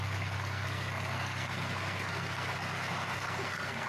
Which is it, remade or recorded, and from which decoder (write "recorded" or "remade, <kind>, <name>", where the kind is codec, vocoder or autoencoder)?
remade, codec, SNAC